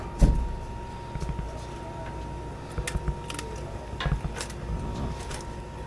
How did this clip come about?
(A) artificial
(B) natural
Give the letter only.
B